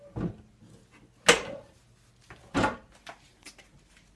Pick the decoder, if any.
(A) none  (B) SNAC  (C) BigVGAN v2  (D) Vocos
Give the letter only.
A